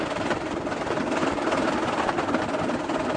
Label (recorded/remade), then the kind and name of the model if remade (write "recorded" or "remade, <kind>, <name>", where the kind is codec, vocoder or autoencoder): recorded